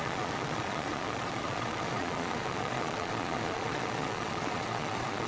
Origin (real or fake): fake